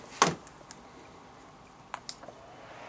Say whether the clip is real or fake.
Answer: real